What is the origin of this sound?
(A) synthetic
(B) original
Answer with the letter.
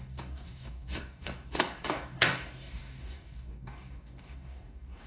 A